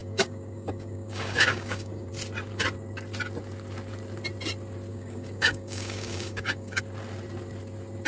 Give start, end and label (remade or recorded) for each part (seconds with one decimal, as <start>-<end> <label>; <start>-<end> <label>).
0.0-2.1 remade; 2.1-4.9 recorded; 4.9-6.8 remade; 6.8-8.1 recorded